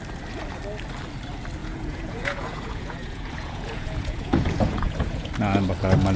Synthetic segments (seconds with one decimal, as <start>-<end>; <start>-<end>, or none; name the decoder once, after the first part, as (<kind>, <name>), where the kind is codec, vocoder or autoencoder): 1.6-5.3 (vocoder, Vocos)